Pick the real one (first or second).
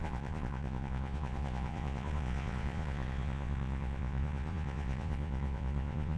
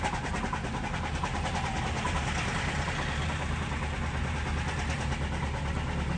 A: second